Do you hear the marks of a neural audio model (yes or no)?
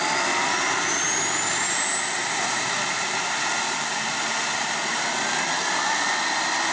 yes